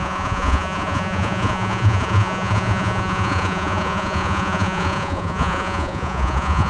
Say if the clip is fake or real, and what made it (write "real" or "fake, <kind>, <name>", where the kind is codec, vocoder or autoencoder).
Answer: fake, vocoder, Vocos